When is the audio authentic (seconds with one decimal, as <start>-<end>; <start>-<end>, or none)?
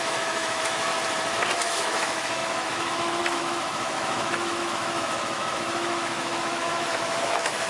0.9-1.5